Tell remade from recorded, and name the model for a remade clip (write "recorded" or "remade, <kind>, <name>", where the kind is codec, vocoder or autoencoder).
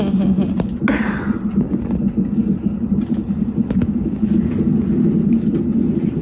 recorded